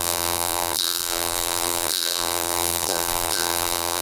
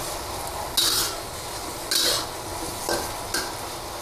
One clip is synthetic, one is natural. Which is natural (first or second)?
second